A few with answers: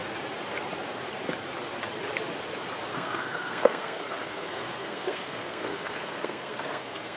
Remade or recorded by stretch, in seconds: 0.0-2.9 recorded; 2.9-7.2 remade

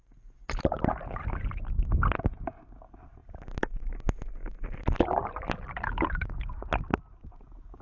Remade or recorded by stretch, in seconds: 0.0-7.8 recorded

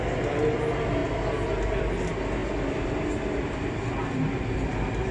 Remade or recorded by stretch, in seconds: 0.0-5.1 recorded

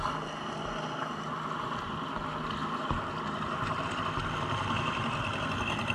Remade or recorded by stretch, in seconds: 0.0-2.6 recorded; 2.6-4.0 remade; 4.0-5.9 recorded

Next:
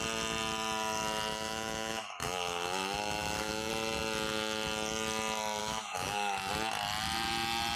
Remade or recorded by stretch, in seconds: 0.0-1.3 recorded; 1.3-3.7 remade; 3.7-5.6 recorded; 5.6-6.5 remade; 6.5-7.8 recorded

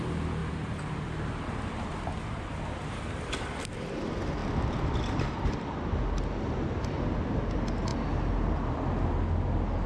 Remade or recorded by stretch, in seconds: 0.0-9.9 recorded